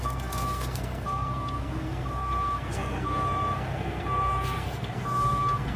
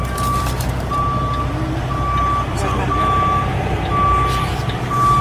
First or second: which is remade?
first